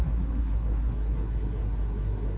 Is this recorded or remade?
remade